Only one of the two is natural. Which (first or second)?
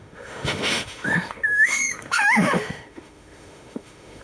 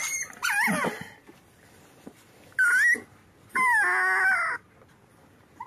second